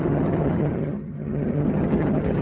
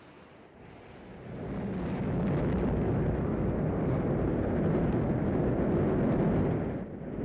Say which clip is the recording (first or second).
second